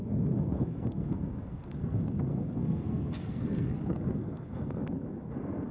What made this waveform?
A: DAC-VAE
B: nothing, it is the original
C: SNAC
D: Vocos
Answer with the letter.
C